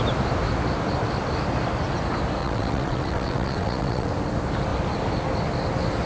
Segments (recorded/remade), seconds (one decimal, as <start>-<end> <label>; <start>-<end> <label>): 0.0-2.4 recorded; 2.4-4.1 remade; 4.1-6.1 recorded